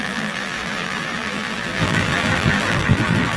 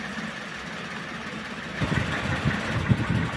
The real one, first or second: second